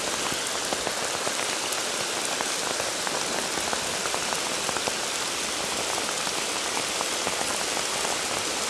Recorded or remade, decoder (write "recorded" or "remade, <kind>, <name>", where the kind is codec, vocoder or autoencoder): recorded